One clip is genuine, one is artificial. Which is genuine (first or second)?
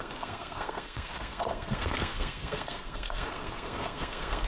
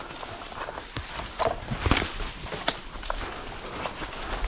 second